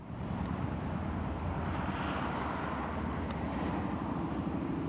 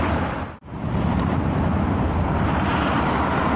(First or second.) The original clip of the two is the first